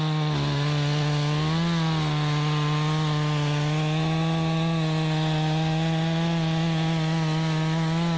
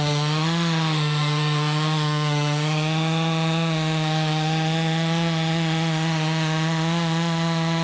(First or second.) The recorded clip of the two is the first